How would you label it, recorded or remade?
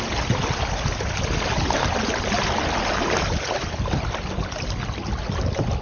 recorded